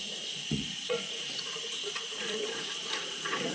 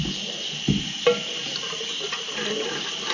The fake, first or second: first